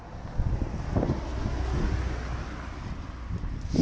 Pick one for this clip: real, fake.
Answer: real